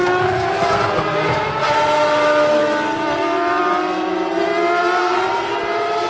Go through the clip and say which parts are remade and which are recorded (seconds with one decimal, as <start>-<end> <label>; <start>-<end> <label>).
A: 0.0-0.8 remade; 0.8-5.0 recorded; 5.0-5.5 remade; 5.5-6.1 recorded